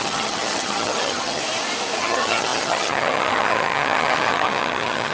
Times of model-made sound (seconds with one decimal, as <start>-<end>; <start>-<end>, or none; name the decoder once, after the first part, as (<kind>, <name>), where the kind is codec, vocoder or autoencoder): 0.0-1.4 (vocoder, HiFi-GAN); 2.0-5.1